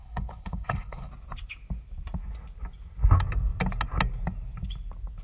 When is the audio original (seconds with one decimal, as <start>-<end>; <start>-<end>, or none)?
1.1-5.2